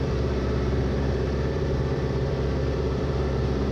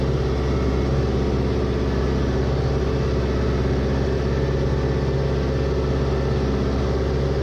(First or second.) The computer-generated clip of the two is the first